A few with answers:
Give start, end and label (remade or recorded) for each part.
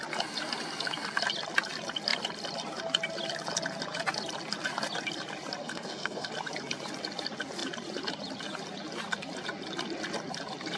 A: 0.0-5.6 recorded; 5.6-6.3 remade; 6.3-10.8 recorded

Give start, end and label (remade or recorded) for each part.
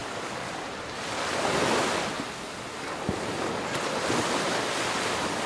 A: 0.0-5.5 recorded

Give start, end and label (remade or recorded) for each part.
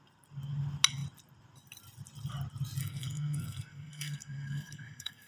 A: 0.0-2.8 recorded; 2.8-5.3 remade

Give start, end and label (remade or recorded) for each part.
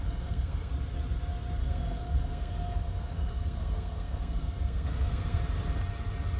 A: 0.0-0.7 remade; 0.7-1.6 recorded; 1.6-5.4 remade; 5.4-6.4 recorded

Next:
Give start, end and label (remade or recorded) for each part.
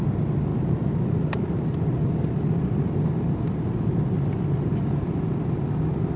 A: 0.0-6.2 recorded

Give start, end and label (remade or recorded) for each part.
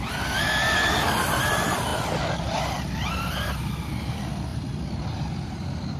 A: 0.0-6.0 recorded